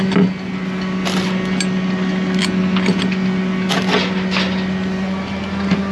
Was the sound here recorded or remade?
recorded